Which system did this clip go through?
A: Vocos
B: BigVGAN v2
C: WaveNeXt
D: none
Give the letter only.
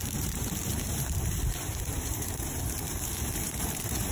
B